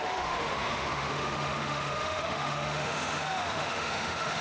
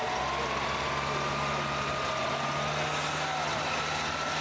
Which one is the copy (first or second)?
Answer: first